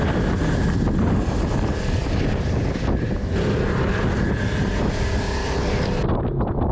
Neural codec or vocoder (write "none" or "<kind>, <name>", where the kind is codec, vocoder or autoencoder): none